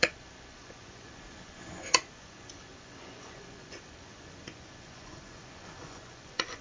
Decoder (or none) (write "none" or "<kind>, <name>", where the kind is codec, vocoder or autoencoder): vocoder, Vocos